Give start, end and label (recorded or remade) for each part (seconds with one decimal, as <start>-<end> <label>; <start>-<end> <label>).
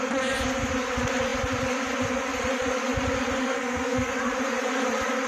0.0-3.4 recorded; 3.4-4.1 remade; 4.1-5.3 recorded